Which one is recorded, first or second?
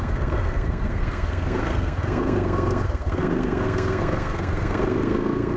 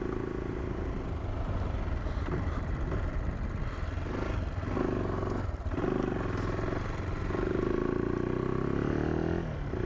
second